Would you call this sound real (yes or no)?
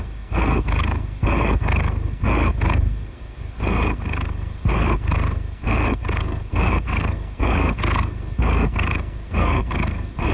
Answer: no